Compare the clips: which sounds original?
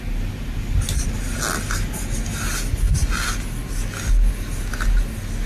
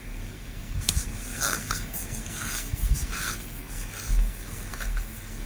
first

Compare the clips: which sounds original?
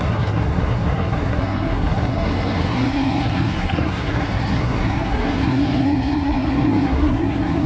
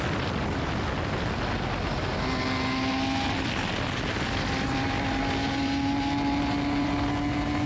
second